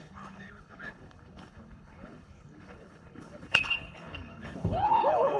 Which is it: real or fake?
fake